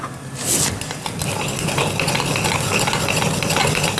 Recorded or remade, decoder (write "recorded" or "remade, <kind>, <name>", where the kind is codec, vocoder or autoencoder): recorded